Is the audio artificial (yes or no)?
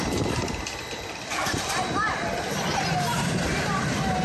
yes